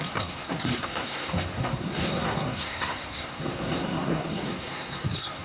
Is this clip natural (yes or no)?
no